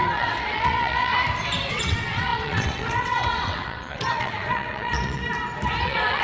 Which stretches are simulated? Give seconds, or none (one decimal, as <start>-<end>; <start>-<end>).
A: 0.0-1.1; 1.7-5.2; 5.8-6.2